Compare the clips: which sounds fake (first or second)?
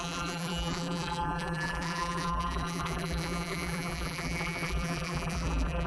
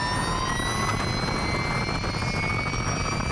first